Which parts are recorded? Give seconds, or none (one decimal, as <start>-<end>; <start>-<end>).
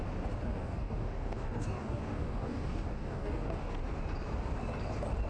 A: 0.0-0.5; 3.7-5.3